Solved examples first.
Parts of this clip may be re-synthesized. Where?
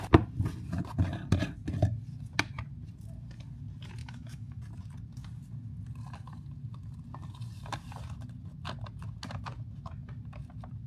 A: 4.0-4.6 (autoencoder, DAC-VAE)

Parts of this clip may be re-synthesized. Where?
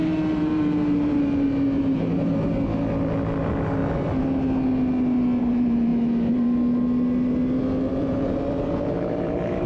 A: 0.0-2.5 (vocoder, BigVGAN v2); 3.4-3.8; 5.4-5.9; 7.9-9.7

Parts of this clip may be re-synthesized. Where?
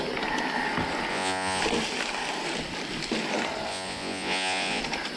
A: 1.1-1.6 (vocoder, Vocos); 3.7-4.8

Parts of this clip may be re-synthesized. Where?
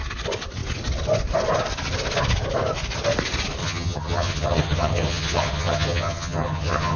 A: 3.6-7.0 (vocoder, HiFi-GAN)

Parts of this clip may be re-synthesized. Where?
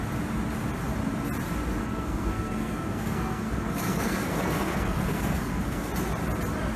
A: 1.8-5.9 (codec, SNAC)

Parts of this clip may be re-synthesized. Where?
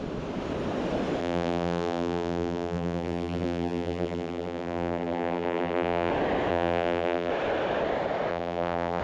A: 1.2-6.1 (vocoder, BigVGAN v2); 6.5-7.3; 8.3-9.0